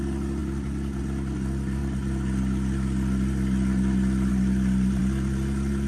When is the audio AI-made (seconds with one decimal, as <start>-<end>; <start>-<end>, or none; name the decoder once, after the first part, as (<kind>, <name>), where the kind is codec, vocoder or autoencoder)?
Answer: none